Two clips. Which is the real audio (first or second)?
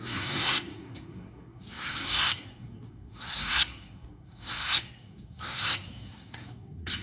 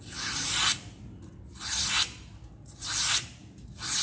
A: second